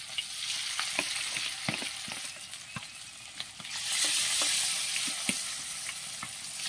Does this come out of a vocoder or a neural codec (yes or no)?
no